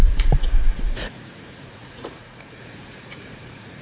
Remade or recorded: remade